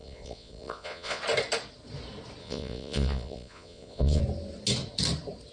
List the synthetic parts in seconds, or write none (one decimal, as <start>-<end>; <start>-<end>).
0.0-1.2; 2.4-4.2

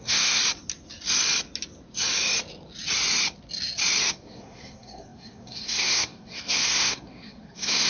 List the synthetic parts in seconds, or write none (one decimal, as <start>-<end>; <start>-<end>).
0.0-0.4; 4.1-7.9

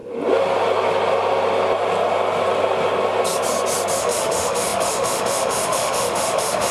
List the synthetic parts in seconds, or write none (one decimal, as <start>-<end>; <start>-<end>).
4.0-6.7

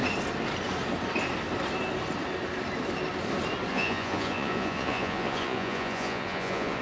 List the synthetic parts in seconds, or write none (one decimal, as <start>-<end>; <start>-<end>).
3.7-6.8

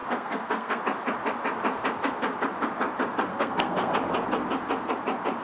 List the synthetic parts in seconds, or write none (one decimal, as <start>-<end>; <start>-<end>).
0.0-0.8; 3.3-3.9